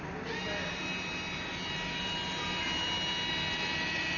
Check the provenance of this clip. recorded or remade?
recorded